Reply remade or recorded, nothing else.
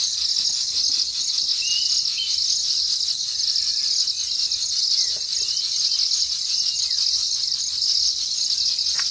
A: recorded